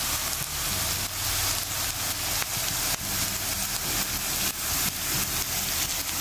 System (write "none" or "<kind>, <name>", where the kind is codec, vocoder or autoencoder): none